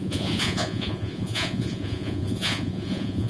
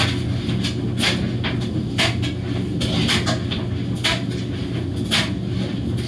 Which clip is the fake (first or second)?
first